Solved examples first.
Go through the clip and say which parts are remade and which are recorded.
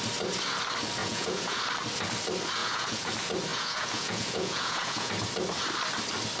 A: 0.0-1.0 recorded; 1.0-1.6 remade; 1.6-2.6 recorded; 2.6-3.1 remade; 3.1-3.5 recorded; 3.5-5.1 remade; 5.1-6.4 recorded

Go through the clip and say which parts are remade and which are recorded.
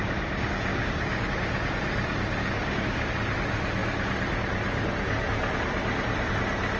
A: 0.0-0.7 recorded; 0.7-1.3 remade; 1.3-2.4 recorded; 2.4-3.1 remade; 3.1-6.8 recorded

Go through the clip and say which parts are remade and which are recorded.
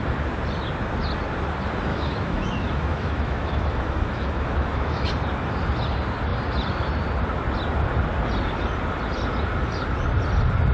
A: 0.0-1.9 recorded; 1.9-5.1 remade; 5.1-10.7 recorded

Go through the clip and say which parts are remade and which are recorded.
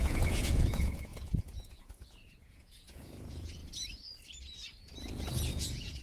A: 0.0-3.6 remade; 3.6-5.6 recorded; 5.6-6.0 remade